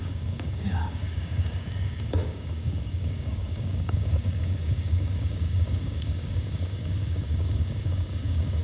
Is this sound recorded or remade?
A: remade